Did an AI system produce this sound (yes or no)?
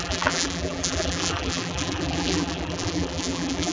yes